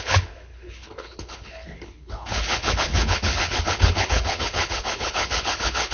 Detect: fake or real fake